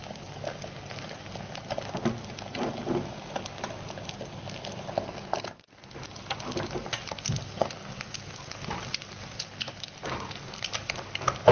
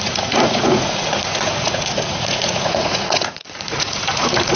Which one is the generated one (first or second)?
second